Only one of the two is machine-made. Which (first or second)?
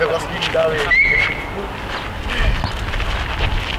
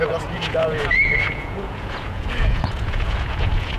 second